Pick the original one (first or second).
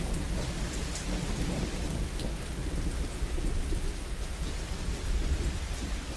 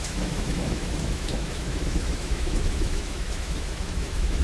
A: first